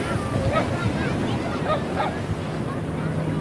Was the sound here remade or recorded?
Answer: recorded